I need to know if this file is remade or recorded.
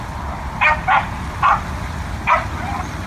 recorded